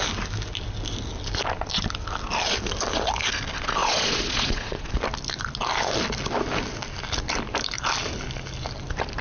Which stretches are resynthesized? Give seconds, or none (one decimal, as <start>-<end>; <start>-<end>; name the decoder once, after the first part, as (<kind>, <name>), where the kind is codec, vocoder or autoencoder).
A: 3.8-4.9 (vocoder, Vocos)